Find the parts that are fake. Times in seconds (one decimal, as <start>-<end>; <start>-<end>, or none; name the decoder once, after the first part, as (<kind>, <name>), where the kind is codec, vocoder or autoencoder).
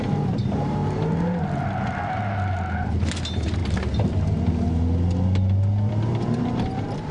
0.0-0.8 (vocoder, BigVGAN v2); 3.2-3.6; 5.9-7.1